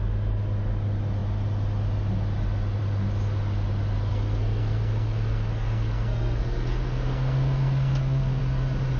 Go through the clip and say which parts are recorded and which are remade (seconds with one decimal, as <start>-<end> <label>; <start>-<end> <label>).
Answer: 0.0-4.1 recorded; 4.1-8.4 remade; 8.4-9.0 recorded